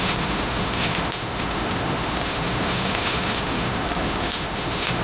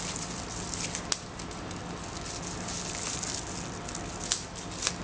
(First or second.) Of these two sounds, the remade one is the first